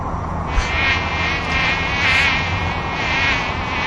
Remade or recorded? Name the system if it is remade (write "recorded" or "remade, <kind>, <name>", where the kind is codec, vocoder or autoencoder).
remade, vocoder, Vocos